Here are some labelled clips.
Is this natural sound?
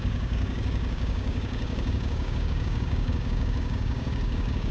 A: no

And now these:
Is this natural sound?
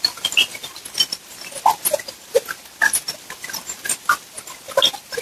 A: yes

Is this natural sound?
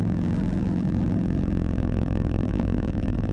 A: no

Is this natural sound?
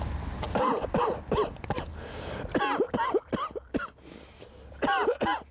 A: yes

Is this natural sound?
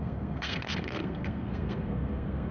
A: no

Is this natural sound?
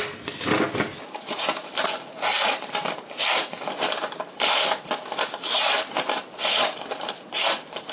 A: yes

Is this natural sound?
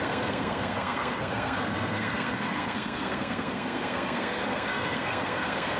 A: no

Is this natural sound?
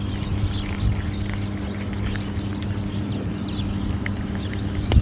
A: yes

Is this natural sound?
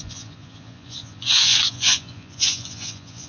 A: no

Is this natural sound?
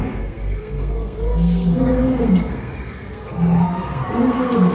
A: no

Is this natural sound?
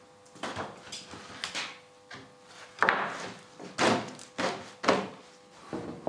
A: yes